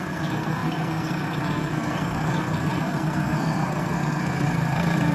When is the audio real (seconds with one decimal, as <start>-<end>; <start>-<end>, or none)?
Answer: none